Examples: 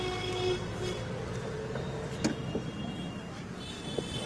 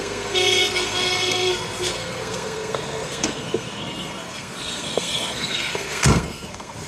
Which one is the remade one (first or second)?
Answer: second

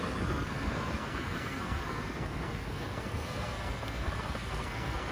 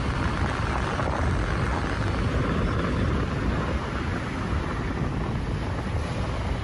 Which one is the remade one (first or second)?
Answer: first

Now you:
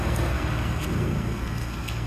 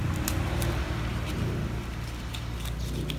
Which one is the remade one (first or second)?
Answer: first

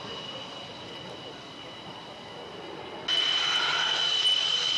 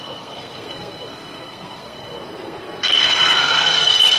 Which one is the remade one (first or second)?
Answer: second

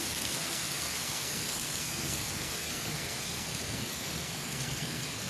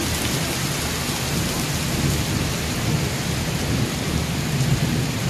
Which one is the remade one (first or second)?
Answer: first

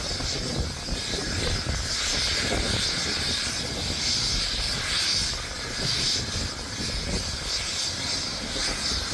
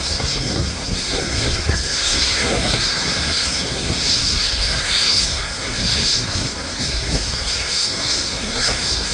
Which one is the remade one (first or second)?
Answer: second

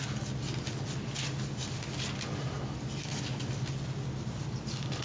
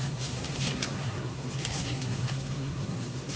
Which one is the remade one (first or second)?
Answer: second